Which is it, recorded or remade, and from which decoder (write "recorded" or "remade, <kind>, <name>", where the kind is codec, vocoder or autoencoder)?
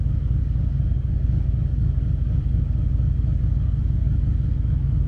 remade, codec, DAC